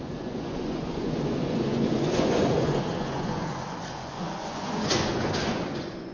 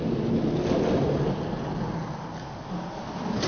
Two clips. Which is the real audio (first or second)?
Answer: second